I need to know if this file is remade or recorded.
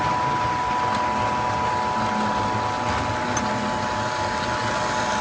recorded